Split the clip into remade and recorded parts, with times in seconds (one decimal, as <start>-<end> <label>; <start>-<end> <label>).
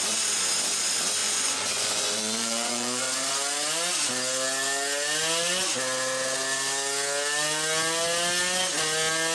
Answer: 0.0-1.2 recorded; 1.2-3.3 remade; 3.3-9.3 recorded